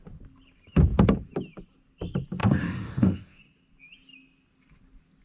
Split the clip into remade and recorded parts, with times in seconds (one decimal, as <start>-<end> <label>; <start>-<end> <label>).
0.0-2.4 recorded; 2.4-3.4 remade; 3.4-5.2 recorded